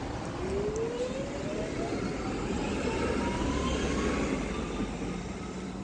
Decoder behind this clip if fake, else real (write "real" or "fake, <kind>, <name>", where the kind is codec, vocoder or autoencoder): real